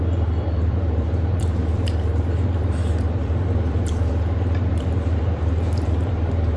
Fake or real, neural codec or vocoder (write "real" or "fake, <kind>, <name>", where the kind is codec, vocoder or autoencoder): fake, vocoder, BigVGAN v2